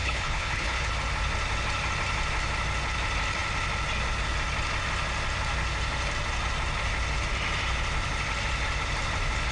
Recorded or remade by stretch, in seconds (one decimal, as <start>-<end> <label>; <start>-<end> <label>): 0.0-0.9 remade; 0.9-9.5 recorded